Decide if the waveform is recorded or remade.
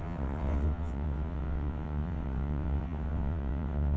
remade